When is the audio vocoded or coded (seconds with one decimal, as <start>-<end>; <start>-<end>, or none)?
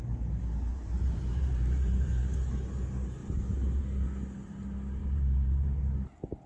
0.7-2.2; 5.0-5.8